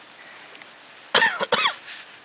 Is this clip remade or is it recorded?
recorded